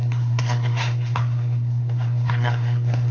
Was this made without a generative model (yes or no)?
no